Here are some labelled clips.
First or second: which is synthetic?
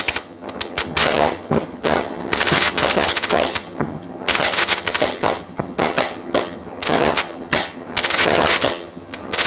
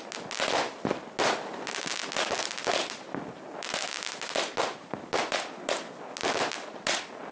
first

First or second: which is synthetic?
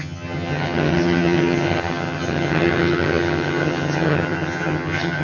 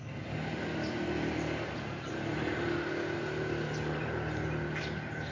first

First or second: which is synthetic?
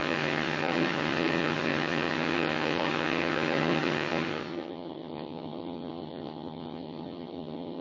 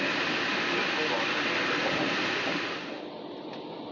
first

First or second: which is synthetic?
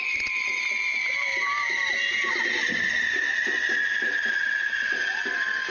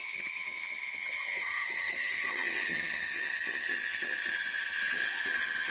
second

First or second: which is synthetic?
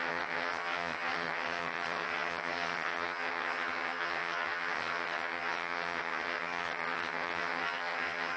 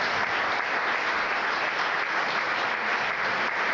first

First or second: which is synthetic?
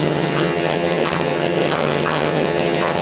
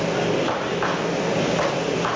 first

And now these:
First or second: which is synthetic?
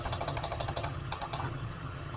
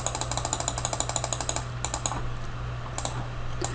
first